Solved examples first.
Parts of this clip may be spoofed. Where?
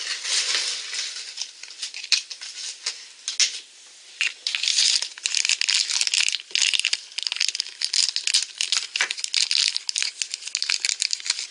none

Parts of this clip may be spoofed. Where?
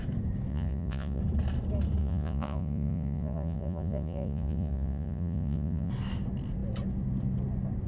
0.5-1.2 (vocoder, Vocos); 2.0-5.9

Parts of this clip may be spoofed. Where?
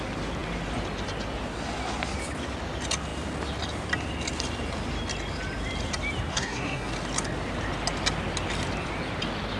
6.3-6.9 (codec, SNAC)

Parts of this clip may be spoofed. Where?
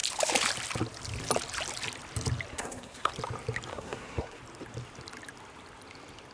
2.5-3.1 (codec, SNAC); 3.7-4.4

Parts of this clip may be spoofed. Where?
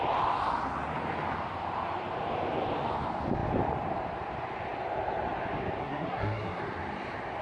5.8-6.6 (codec, SNAC)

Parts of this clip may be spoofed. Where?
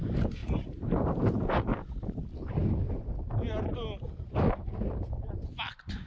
0.4-2.1 (vocoder, BigVGAN v2)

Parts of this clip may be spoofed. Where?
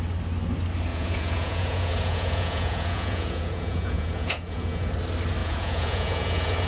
0.9-4.9 (vocoder, Vocos); 5.4-6.7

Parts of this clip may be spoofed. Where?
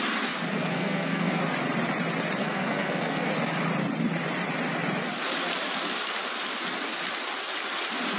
0.5-1.4 (codec, SNAC); 2.4-3.3